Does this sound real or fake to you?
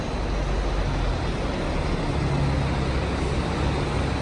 real